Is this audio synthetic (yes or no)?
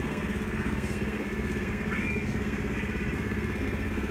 yes